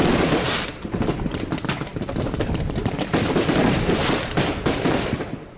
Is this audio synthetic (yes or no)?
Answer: no